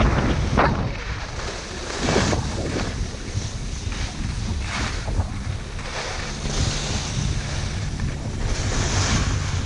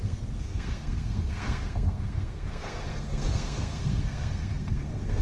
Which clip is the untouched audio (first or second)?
first